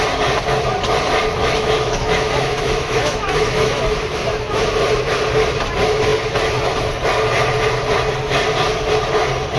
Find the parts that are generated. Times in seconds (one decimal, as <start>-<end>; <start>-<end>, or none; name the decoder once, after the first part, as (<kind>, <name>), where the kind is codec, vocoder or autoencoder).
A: 1.4-3.8 (autoencoder, DAC-VAE)